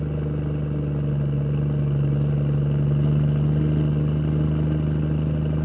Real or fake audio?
real